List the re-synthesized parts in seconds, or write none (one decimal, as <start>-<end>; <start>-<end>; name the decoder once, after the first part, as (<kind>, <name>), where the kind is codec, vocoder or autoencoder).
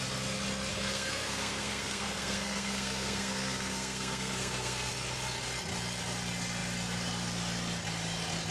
0.7-4.9 (codec, SNAC)